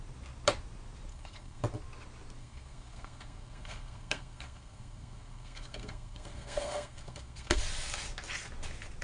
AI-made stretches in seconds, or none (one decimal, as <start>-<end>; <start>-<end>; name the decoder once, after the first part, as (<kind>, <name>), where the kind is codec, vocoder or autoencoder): 1.1-1.6 (codec, SNAC); 2.4-7.6